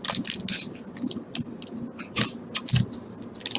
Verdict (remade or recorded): recorded